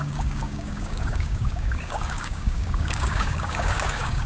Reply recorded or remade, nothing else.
remade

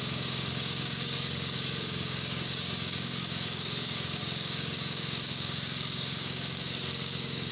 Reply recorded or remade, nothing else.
remade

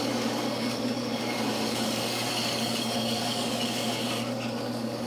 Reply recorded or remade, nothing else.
remade